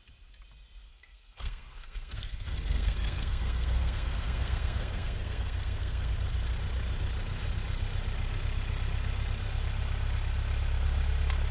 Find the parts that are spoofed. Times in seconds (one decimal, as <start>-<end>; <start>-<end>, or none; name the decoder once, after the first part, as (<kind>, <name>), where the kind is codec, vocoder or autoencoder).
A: 0.9-6.1 (codec, SNAC)